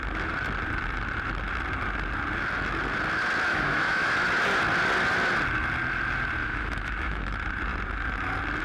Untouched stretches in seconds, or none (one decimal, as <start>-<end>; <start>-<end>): 0.0-3.5; 4.1-6.4; 7.3-8.6